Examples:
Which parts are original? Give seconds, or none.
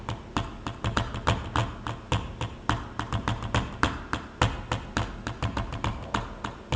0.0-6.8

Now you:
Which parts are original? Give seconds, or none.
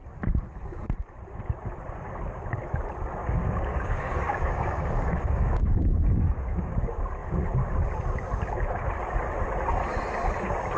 0.0-3.2; 6.8-10.8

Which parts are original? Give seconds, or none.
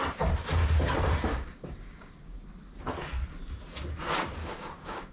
0.0-1.3; 2.4-4.4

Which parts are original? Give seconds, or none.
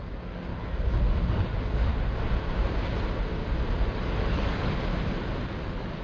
0.5-1.3; 1.9-3.9; 4.9-5.6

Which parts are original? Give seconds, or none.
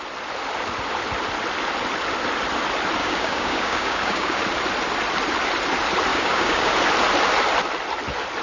0.0-3.0; 4.4-6.1; 6.7-8.4